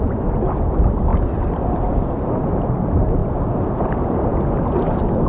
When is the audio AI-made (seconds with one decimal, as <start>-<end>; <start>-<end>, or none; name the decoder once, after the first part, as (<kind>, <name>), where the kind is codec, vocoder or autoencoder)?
3.2-4.3 (vocoder, BigVGAN v2)